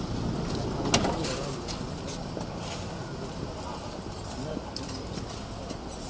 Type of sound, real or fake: real